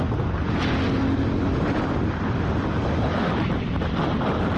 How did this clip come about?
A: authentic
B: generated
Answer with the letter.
A